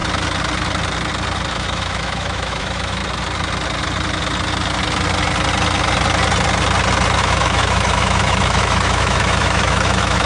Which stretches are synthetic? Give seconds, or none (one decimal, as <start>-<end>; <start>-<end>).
1.5-3.0; 7.2-10.3